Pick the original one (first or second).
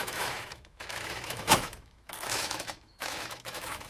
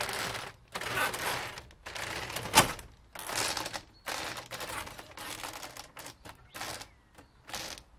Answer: second